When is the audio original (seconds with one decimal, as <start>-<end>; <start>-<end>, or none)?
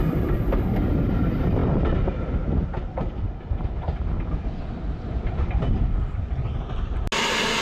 0.0-7.6